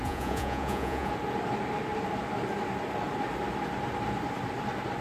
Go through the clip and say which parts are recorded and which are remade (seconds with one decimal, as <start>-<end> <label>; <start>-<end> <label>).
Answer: 0.0-1.1 remade; 1.1-5.0 recorded